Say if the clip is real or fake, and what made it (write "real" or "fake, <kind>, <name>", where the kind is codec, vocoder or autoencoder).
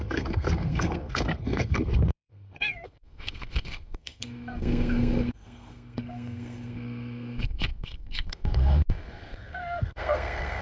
fake, codec, SNAC